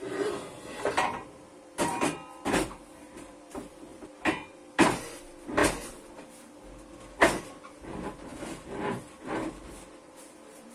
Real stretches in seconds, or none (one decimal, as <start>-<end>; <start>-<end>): 3.9-4.5; 5.6-7.4